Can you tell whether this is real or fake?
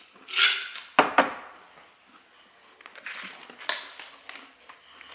real